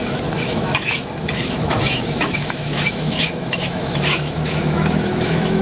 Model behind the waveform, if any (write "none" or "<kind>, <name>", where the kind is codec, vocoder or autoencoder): autoencoder, DAC-VAE